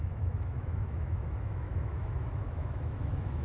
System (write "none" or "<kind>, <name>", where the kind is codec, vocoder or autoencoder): autoencoder, DAC-VAE